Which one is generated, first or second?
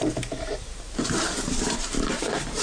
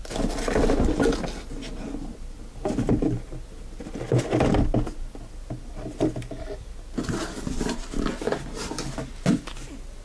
first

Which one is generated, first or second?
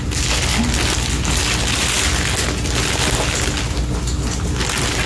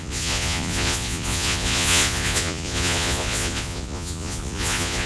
second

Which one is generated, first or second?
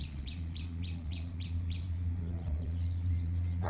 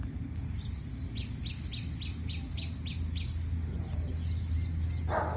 first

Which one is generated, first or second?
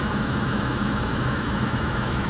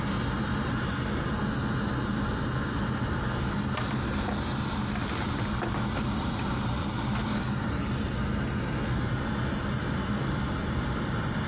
first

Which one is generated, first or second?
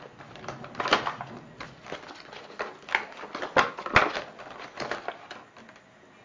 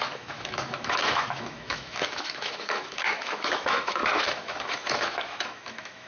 second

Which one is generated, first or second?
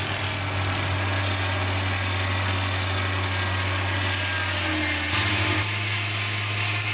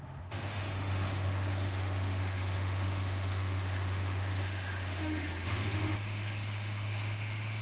second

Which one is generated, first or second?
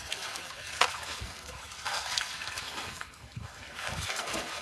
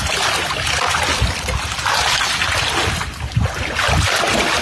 first